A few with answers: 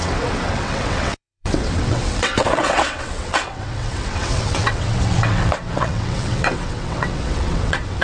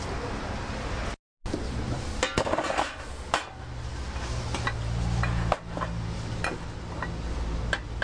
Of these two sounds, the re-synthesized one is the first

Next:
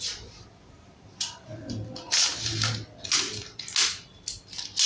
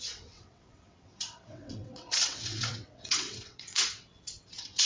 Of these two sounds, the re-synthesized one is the second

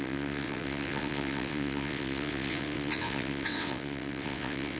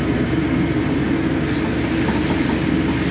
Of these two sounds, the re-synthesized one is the first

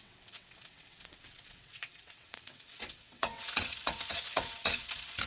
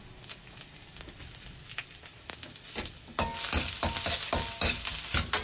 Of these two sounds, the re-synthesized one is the first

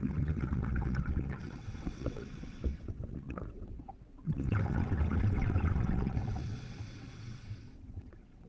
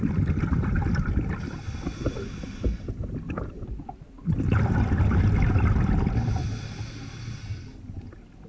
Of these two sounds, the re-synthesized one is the first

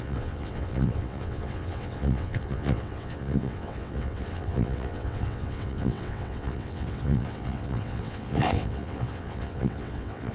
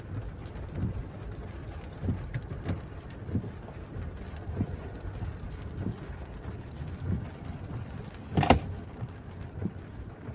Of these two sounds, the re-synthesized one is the first